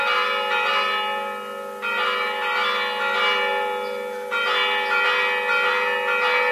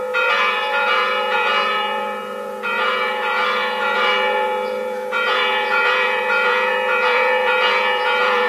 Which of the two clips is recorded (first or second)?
first